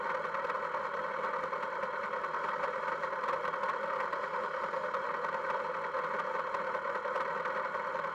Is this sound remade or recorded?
recorded